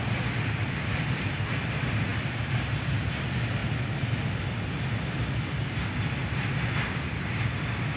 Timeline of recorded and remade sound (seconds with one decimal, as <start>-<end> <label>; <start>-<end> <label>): 0.0-8.0 recorded